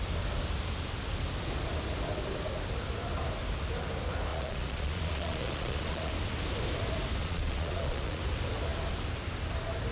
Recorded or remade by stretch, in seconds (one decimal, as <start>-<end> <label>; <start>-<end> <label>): 0.0-4.3 recorded; 4.3-6.1 remade; 6.1-7.2 recorded; 7.2-8.2 remade; 8.2-9.9 recorded